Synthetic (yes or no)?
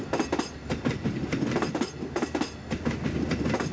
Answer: no